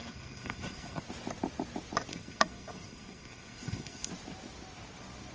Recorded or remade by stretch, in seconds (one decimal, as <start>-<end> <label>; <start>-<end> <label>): 0.0-1.0 remade; 1.0-2.1 recorded; 2.1-4.1 remade; 4.1-5.3 recorded